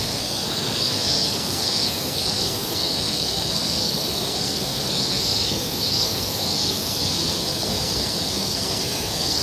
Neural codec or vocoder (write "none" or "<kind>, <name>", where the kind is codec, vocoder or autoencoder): codec, SNAC